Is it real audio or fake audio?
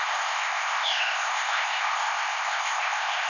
fake